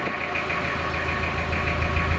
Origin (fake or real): real